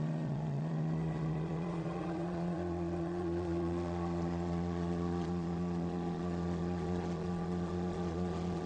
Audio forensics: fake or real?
fake